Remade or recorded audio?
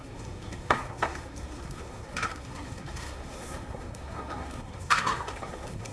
remade